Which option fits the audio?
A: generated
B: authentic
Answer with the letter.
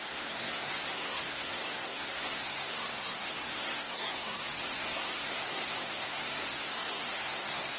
A